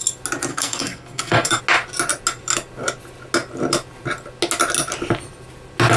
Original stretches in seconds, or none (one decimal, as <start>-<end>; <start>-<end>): 0.0-0.5; 1.6-6.0